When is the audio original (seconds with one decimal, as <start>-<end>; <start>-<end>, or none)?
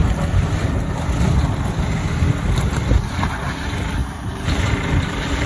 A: 0.0-4.0